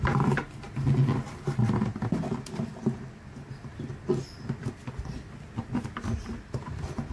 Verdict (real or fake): real